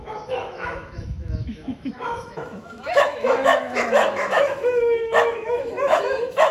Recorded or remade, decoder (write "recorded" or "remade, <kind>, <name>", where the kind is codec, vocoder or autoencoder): remade, autoencoder, DAC-VAE